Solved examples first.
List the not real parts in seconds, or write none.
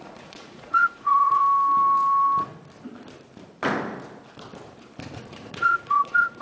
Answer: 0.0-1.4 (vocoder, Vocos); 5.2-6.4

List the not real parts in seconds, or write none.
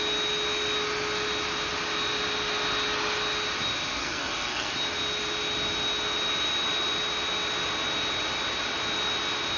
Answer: 4.0-4.7 (codec, SNAC)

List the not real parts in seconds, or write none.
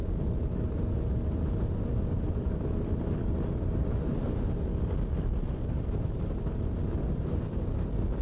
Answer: 1.9-4.1 (vocoder, BigVGAN v2)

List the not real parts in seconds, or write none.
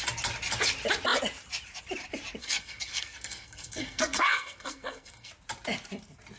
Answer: 2.4-5.3 (codec, SNAC)